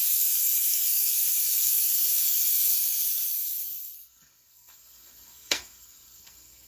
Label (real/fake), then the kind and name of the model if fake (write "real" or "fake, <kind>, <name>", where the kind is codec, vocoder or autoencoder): fake, codec, SNAC